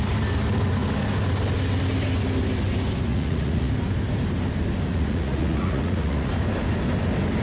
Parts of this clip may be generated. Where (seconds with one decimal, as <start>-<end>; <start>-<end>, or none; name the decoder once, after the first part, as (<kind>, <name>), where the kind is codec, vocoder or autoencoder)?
3.1-3.7 (vocoder, Vocos); 4.9-6.3